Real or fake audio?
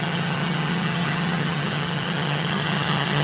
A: fake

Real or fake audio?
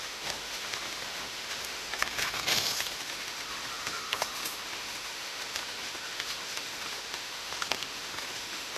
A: fake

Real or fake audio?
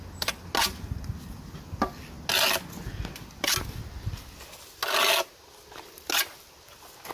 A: real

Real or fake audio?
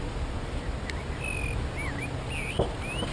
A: real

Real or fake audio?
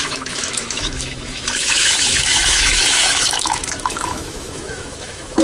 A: fake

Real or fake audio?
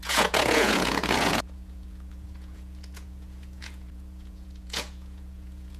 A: fake